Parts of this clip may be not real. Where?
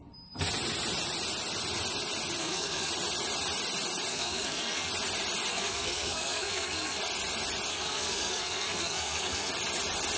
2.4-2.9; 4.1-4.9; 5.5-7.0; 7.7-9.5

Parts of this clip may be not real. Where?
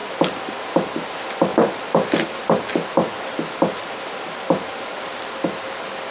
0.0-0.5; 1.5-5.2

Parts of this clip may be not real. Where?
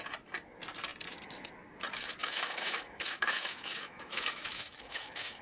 2.2-5.4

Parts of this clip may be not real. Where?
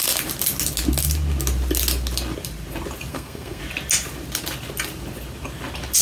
3.1-3.6